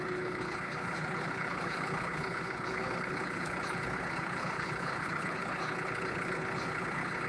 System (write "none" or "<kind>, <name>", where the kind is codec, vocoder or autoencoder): codec, HILCodec